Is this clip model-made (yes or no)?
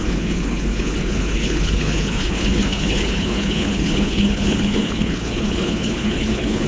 yes